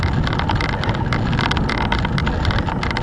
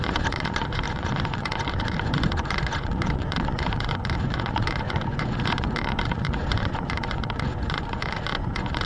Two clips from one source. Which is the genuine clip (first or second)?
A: first